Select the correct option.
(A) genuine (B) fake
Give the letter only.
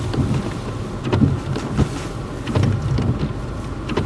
A